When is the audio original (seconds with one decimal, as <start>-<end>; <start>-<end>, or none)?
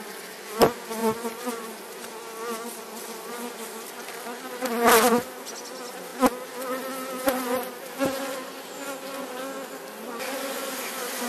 0.0-1.0; 1.8-11.3